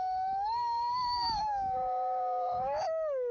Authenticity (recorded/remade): remade